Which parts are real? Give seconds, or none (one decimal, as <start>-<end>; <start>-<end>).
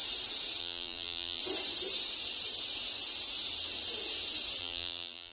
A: 0.0-0.6; 1.4-4.6